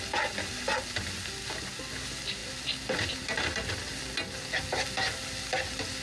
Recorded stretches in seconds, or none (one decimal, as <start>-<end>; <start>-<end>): 0.0-2.4; 3.5-6.0